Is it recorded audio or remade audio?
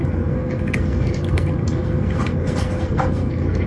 remade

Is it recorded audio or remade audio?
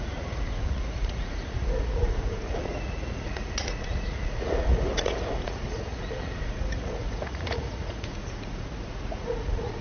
remade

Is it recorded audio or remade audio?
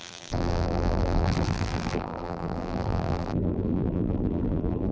remade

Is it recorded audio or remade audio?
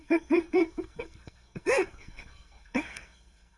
remade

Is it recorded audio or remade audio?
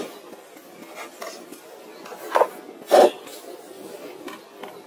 recorded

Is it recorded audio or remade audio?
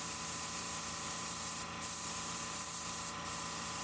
remade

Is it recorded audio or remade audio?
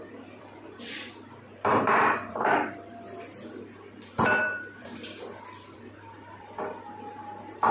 remade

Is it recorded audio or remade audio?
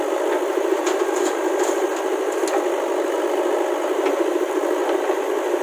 recorded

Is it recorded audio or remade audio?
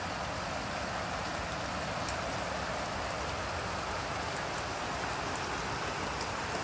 recorded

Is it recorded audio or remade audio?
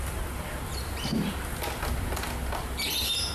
recorded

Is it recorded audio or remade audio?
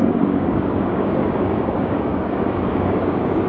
remade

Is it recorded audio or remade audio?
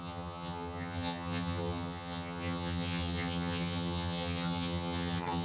remade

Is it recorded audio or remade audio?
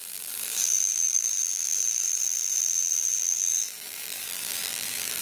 remade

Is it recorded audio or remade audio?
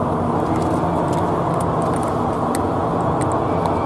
recorded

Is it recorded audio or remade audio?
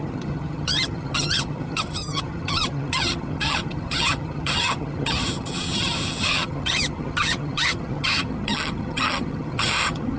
remade